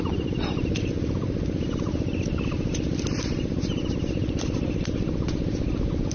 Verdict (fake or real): real